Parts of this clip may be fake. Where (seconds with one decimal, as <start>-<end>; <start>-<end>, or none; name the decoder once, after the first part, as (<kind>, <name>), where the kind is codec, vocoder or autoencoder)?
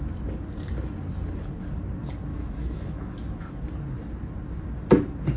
2.3-3.5 (autoencoder, DAC-VAE)